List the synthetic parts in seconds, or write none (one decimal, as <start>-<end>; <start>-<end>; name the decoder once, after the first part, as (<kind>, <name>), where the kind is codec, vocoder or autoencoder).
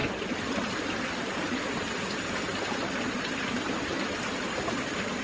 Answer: 0.0-0.8 (vocoder, BigVGAN v2)